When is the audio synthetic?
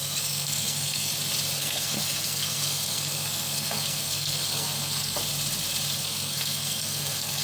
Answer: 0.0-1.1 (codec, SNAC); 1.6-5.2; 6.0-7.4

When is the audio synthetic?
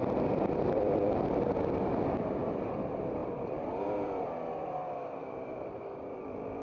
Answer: 0.0-6.6 (vocoder, BigVGAN v2)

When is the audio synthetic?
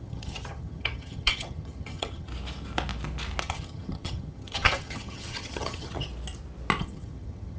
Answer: 0.0-2.3 (vocoder, HiFi-GAN); 3.4-6.1; 6.8-7.6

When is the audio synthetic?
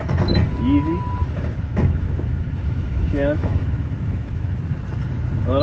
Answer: 1.2-4.6 (autoencoder, DAC-VAE)